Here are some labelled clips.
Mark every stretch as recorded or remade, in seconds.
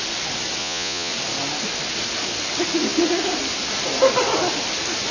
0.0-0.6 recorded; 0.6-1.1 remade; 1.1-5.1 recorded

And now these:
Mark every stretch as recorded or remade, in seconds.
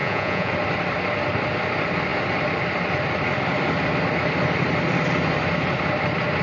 0.0-0.5 remade; 0.5-6.4 recorded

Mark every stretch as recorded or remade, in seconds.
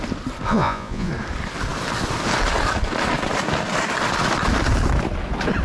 0.0-0.5 recorded; 0.5-1.1 remade; 1.1-5.6 recorded